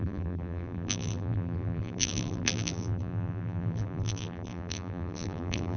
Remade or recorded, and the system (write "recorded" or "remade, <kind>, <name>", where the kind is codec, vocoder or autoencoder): remade, vocoder, BigVGAN v2